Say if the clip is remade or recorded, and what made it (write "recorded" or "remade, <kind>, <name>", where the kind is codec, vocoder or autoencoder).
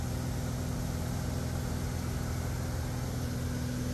recorded